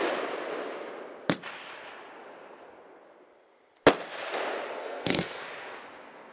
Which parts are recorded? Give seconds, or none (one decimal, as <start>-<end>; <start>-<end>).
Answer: 0.0-4.8; 5.4-6.3